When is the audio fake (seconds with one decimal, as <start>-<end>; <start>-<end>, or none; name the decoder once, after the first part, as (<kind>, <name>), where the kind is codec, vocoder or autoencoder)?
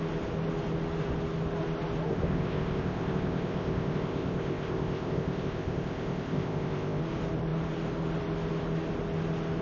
2.1-7.0 (codec, ZipCodec)